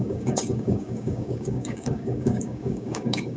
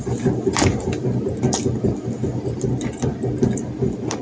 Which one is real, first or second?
second